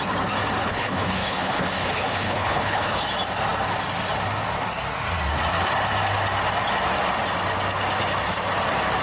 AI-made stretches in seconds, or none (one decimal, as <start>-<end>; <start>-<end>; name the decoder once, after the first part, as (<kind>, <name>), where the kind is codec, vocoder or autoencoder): 0.6-3.0 (codec, HILCodec)